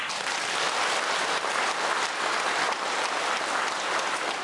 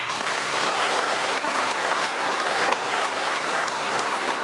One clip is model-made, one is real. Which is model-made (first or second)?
second